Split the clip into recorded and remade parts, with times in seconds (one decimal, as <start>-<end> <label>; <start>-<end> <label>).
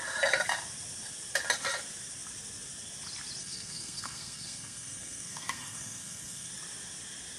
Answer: 0.0-3.4 recorded; 3.4-6.5 remade; 6.5-7.4 recorded